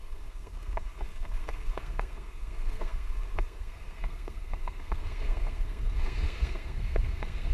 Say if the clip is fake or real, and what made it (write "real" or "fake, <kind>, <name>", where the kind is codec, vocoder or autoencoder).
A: fake, codec, SNAC